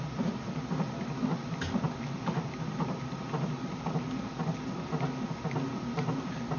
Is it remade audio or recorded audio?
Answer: recorded